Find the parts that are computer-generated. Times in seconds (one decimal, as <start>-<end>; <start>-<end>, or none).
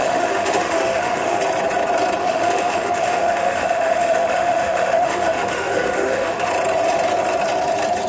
0.0-1.4; 2.2-6.5